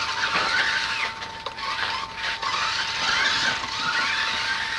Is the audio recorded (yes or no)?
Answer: yes